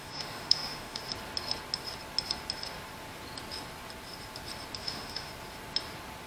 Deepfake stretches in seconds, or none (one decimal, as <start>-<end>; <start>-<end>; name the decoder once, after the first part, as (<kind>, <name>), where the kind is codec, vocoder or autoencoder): 0.0-1.0 (autoencoder, DAC-VAE); 4.8-5.3